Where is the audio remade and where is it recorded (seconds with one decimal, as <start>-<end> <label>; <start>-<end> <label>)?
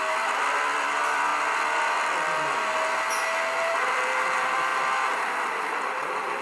0.0-1.3 remade; 1.3-3.7 recorded; 3.7-4.7 remade; 4.7-5.5 recorded; 5.5-6.4 remade